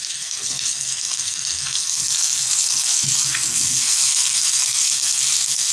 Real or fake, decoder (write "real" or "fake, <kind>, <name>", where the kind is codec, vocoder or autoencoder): fake, codec, SNAC